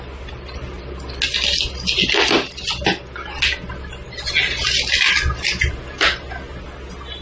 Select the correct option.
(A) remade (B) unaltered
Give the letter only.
B